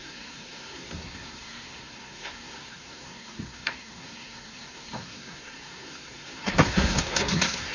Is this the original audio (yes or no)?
no